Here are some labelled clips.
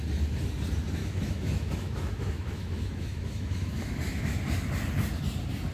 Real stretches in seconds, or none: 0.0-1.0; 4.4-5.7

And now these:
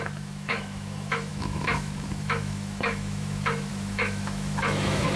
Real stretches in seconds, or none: none

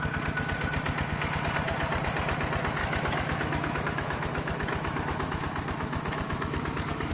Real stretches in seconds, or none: 0.0-2.8

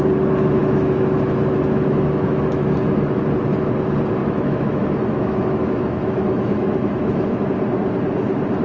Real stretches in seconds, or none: 0.0-0.6; 2.9-4.2; 7.5-8.6

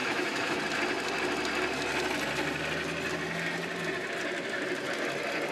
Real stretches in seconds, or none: 0.6-5.5

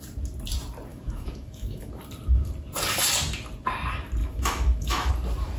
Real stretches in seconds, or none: 0.0-0.9; 1.9-4.2; 5.1-5.6